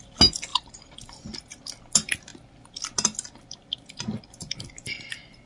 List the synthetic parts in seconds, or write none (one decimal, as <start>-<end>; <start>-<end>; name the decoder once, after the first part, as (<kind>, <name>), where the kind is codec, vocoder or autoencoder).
0.5-1.2 (vocoder, BigVGAN v2)